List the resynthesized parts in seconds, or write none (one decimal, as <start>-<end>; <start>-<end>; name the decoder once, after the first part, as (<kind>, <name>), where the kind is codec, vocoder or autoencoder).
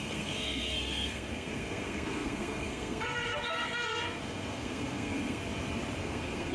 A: 0.0-5.4 (codec, SNAC); 6.0-6.5